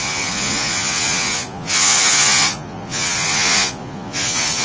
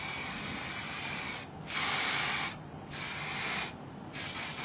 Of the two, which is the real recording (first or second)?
second